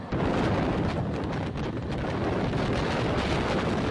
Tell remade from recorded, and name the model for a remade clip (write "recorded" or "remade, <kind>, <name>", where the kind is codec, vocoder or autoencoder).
recorded